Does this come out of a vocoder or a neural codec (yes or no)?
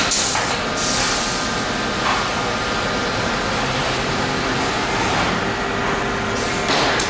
no